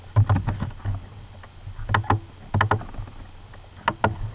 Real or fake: real